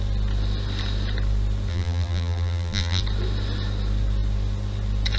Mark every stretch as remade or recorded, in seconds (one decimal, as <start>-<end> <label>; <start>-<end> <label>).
0.0-1.7 recorded; 1.7-3.0 remade; 3.0-5.2 recorded